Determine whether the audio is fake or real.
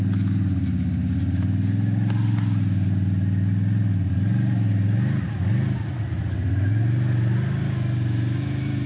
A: real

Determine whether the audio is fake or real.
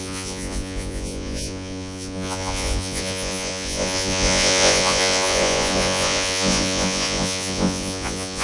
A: fake